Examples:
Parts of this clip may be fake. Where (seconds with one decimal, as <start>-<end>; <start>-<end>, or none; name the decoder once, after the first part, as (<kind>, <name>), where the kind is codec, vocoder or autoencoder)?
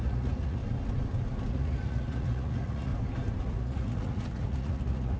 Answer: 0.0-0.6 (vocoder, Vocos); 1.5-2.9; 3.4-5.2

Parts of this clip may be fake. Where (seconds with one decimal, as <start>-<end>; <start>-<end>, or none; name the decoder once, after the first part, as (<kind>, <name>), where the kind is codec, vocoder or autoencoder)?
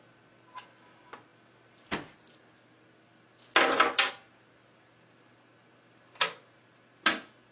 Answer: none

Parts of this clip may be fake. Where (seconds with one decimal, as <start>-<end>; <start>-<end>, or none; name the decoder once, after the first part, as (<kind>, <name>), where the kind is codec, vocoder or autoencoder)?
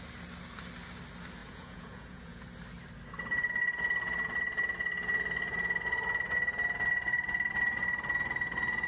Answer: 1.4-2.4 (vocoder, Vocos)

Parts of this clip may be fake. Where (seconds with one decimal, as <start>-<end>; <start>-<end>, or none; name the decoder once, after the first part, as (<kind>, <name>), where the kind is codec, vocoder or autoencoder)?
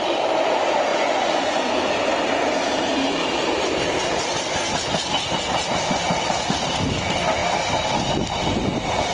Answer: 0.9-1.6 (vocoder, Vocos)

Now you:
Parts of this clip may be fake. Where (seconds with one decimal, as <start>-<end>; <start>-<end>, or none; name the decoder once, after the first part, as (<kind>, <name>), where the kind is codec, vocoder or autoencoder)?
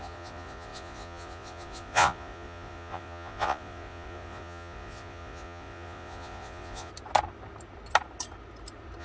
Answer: 0.0-6.9 (vocoder, Vocos)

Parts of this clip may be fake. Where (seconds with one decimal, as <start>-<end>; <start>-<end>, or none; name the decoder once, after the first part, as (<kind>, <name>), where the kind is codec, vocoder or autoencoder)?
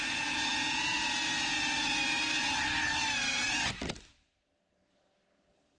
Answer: none